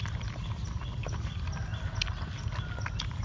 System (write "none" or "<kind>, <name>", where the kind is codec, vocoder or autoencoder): none